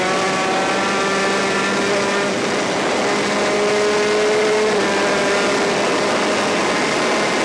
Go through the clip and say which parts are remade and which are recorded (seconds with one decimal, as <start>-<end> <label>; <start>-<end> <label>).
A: 0.0-7.4 recorded